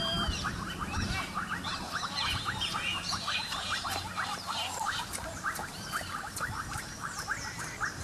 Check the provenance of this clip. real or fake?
fake